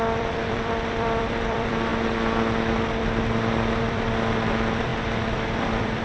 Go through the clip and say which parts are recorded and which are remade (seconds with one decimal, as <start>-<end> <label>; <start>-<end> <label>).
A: 0.0-1.9 remade; 1.9-3.8 recorded; 3.8-6.0 remade